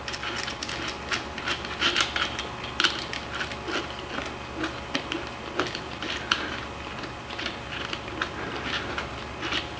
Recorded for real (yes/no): yes